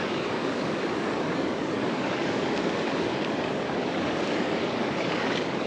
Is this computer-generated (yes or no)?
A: yes